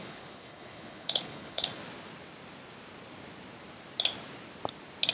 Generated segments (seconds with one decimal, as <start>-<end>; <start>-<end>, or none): 0.0-1.8